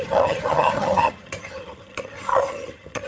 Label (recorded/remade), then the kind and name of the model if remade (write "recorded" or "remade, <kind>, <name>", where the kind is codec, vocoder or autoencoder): remade, vocoder, HiFi-GAN